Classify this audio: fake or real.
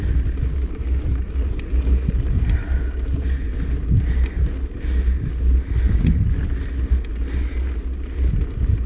real